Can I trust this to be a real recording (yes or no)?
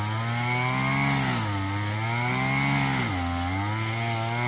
yes